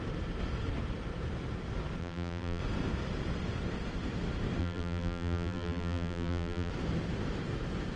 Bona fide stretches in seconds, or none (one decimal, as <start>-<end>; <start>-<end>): 0.0-2.0; 2.6-4.6; 6.7-8.0